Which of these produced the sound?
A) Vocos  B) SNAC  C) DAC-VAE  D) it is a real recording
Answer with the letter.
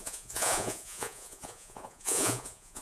A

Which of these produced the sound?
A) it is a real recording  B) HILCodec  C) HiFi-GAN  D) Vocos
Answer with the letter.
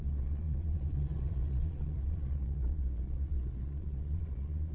D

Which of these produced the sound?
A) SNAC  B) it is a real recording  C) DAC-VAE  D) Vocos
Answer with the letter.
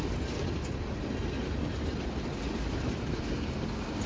B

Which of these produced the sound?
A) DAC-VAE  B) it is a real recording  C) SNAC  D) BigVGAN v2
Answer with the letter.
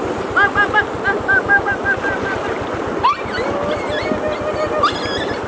B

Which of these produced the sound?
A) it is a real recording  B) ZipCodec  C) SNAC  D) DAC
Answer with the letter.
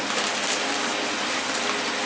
A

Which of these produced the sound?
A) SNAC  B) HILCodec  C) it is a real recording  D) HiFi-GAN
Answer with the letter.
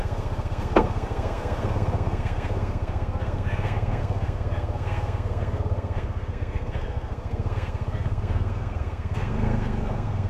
A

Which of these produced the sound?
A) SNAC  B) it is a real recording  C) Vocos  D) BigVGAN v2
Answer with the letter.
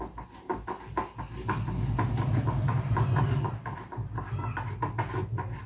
B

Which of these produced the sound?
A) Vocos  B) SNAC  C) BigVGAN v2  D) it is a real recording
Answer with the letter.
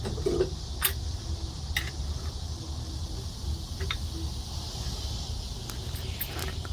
D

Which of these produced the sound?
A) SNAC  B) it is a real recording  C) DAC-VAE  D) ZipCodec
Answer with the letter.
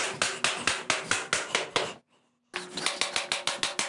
B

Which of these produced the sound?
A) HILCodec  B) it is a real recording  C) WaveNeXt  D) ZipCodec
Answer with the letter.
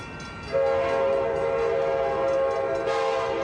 B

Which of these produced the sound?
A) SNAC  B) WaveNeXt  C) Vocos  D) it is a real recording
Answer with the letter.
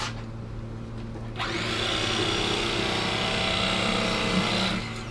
D